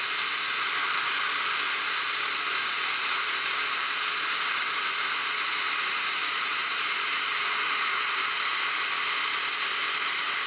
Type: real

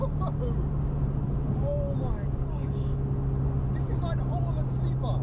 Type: real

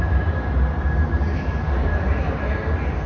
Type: real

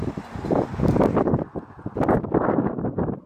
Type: real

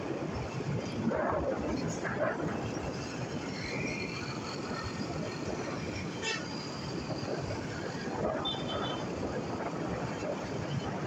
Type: fake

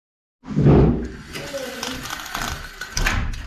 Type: real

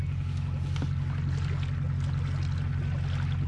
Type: real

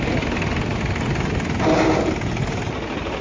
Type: real